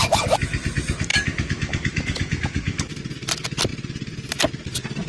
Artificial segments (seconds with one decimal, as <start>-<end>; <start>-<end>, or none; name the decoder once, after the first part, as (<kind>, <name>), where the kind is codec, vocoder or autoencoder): 1.1-3.0 (autoencoder, DAC-VAE)